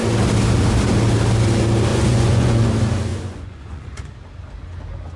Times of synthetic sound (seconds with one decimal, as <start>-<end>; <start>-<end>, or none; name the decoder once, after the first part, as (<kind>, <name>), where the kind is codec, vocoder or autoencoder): 1.9-2.7 (vocoder, Vocos); 3.1-4.1